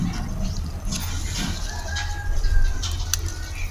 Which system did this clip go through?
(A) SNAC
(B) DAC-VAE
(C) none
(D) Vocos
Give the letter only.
C